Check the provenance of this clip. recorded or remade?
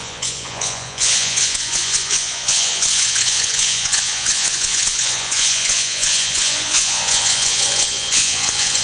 remade